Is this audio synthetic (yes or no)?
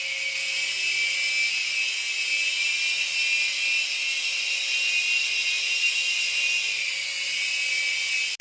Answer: no